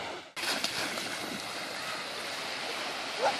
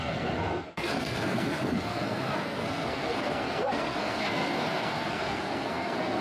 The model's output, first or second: second